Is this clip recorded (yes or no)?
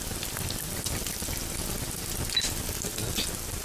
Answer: yes